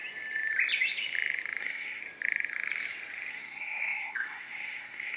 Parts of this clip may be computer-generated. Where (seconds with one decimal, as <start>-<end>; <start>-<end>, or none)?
1.6-2.0; 3.3-5.2

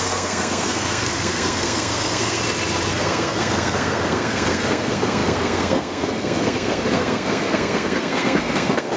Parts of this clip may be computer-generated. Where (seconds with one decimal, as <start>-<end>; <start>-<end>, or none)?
0.0-2.4; 2.9-9.0